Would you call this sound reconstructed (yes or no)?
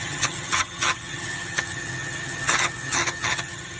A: yes